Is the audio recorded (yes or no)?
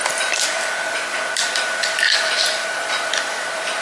yes